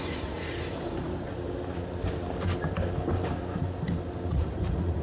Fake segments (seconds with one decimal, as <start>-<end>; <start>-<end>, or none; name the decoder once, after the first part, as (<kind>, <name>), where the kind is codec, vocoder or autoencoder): 0.0-1.3 (vocoder, Vocos); 4.3-5.0